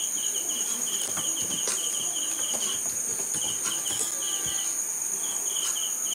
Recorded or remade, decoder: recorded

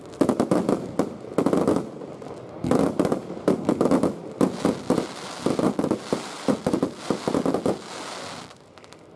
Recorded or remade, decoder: recorded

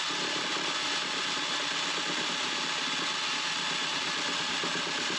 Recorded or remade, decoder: recorded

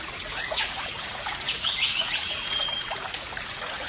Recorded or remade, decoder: remade, vocoder, Vocos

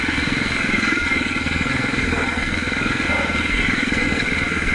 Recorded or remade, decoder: remade, codec, SNAC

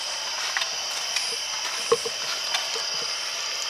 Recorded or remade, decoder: recorded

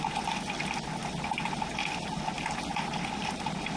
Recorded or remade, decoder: recorded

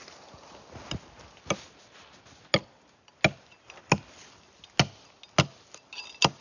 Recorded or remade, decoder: recorded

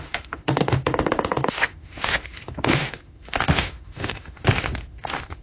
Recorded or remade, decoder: remade, autoencoder, DAC-VAE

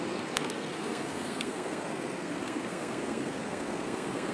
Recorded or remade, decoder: remade, codec, SNAC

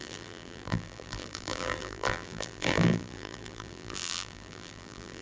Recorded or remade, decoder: remade, vocoder, BigVGAN v2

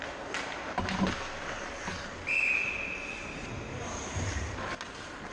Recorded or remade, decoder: recorded